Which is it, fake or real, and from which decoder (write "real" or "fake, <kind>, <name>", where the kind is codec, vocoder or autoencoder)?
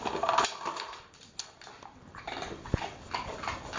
real